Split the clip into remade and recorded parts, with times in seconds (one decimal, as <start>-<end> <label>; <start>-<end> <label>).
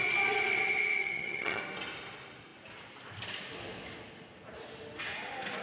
0.0-1.0 recorded; 1.0-1.6 remade; 1.6-5.6 recorded